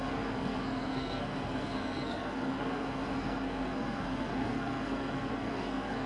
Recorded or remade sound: remade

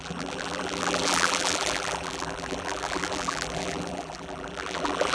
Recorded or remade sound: remade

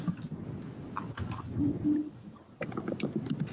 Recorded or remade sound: recorded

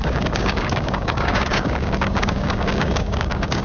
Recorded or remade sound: remade